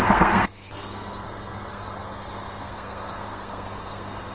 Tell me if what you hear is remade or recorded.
remade